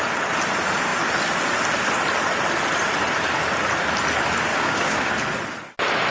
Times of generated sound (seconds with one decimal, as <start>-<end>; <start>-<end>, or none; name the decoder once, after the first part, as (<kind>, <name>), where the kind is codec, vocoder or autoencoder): 4.5-5.1 (codec, DAC)